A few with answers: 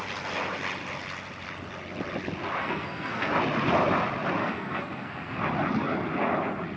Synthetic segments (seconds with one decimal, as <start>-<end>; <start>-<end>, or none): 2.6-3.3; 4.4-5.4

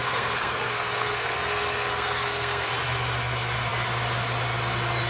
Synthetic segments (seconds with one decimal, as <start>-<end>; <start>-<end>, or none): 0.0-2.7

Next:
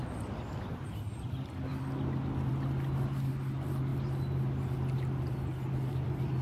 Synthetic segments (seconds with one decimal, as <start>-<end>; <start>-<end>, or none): none

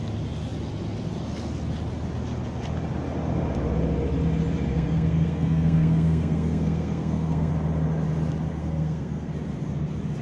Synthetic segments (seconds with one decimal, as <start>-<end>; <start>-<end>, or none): 4.7-7.5; 8.6-9.3

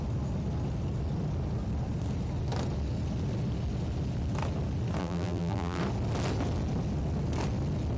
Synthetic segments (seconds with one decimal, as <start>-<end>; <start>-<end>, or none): 5.0-5.8

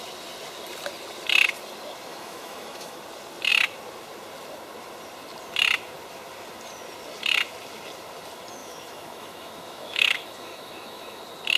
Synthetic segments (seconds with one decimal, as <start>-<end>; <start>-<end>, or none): 2.1-3.0; 8.6-11.2

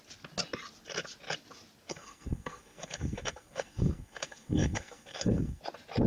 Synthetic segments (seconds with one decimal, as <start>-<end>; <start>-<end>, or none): 1.9-5.6